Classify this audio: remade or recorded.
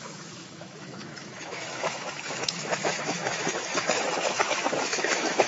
remade